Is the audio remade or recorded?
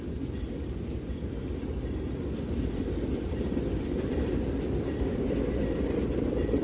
remade